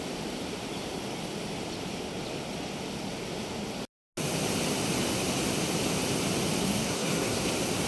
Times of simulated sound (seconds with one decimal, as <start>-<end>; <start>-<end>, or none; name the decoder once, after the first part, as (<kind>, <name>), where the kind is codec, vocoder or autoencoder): 6.6-7.5 (codec, SNAC)